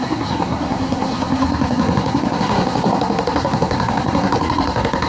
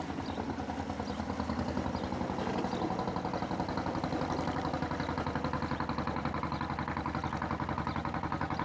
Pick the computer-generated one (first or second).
first